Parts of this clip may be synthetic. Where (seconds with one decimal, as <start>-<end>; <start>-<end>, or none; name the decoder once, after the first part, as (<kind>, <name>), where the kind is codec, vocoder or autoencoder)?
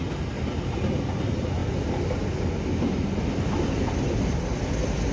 none